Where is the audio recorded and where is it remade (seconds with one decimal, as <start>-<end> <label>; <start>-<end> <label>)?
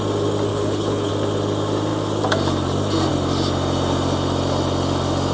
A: 0.0-0.5 recorded; 0.5-1.1 remade; 1.1-5.3 recorded